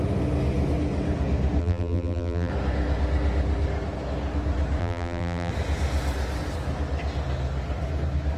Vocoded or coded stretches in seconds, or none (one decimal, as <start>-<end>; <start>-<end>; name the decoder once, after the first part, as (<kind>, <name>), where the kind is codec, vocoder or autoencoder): 1.6-2.5 (vocoder, BigVGAN v2); 4.8-5.5